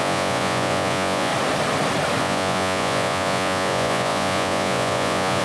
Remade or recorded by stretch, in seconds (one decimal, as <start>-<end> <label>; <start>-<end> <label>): 0.0-1.3 remade; 1.3-2.2 recorded; 2.2-5.4 remade